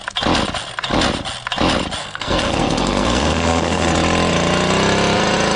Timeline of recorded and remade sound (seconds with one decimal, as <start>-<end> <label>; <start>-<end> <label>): 0.0-2.0 recorded; 2.0-3.9 remade; 3.9-5.6 recorded